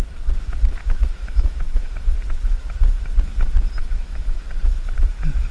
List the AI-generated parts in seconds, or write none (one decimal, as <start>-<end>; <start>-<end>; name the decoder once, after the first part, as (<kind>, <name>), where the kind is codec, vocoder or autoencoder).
0.8-1.9 (autoencoder, DAC-VAE); 3.8-4.4